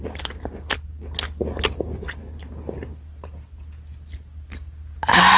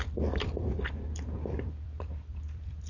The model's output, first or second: second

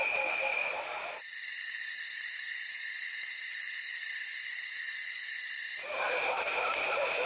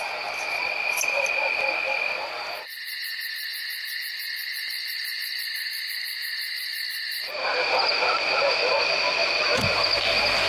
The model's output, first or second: first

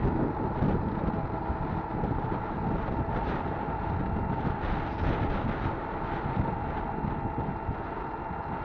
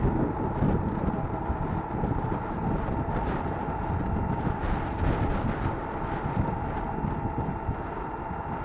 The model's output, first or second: second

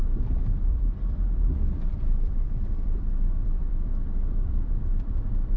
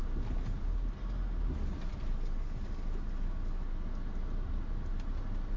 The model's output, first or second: first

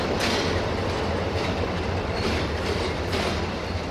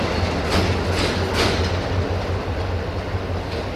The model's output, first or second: first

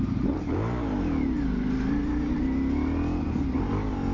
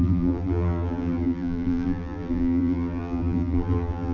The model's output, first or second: second